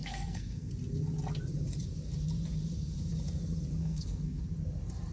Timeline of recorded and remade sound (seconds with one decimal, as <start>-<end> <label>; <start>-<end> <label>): 0.0-0.7 remade; 0.7-3.8 recorded; 3.8-4.4 remade; 4.4-5.1 recorded